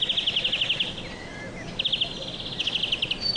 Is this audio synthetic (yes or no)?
no